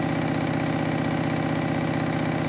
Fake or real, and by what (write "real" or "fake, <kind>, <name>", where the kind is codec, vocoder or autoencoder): real